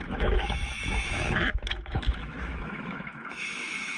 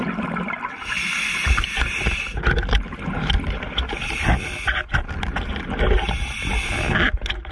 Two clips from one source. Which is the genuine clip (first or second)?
second